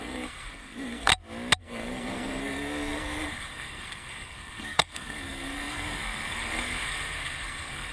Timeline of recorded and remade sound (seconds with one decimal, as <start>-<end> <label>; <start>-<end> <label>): 0.0-1.1 remade; 1.1-1.6 recorded; 1.6-7.9 remade